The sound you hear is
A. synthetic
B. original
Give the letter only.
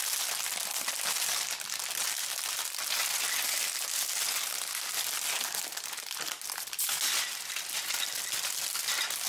B